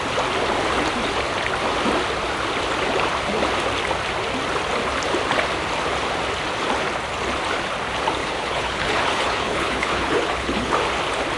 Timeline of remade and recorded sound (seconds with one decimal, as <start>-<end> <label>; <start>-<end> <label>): 0.0-8.2 recorded; 8.2-10.7 remade; 10.7-11.4 recorded